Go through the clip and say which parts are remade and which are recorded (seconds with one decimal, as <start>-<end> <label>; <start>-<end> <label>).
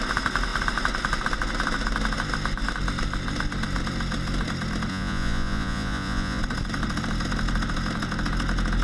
0.0-4.9 recorded; 4.9-6.4 remade; 6.4-8.8 recorded